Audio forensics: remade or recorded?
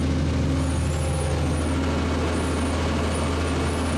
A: recorded